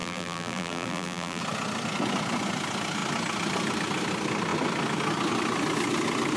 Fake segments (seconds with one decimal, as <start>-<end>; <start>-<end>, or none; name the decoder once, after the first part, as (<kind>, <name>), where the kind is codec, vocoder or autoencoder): 0.0-1.4 (vocoder, BigVGAN v2)

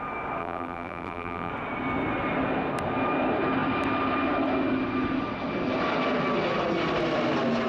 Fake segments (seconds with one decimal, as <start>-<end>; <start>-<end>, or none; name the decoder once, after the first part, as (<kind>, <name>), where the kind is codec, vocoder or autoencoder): 0.4-1.5 (vocoder, BigVGAN v2)

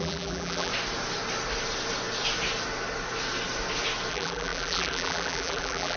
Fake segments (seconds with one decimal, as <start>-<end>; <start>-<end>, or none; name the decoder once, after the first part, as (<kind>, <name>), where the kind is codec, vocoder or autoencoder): 0.0-0.7 (vocoder, BigVGAN v2); 4.1-6.0

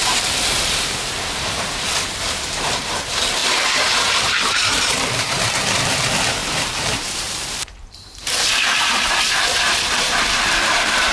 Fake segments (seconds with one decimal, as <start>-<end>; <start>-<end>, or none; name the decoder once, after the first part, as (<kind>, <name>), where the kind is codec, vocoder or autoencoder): 0.0-11.1 (vocoder, BigVGAN v2)

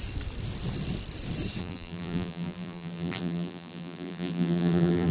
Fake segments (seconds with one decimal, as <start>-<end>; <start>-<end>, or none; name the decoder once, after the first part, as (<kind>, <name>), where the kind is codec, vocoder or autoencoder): 1.6-5.1 (vocoder, BigVGAN v2)

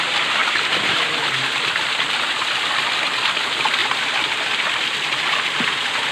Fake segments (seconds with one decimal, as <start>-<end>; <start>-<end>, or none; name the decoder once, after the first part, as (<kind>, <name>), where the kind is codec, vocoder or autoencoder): 0.4-1.3 (vocoder, BigVGAN v2)